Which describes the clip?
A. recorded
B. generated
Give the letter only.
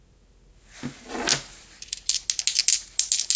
A